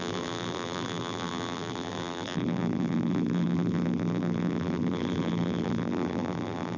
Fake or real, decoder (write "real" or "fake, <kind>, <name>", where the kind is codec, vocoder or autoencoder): fake, vocoder, BigVGAN v2